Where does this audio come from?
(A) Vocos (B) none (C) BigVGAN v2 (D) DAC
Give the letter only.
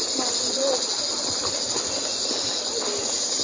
B